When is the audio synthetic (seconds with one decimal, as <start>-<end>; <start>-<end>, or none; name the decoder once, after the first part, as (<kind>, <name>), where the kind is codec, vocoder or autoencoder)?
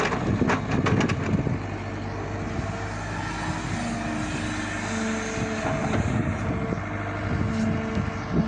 5.8-6.5 (vocoder, BigVGAN v2)